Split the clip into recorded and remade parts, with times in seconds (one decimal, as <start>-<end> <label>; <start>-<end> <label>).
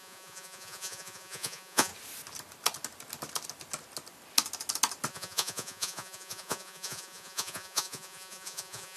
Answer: 0.0-1.9 remade; 1.9-5.1 recorded; 5.1-9.0 remade